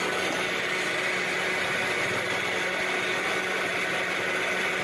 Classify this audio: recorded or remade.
recorded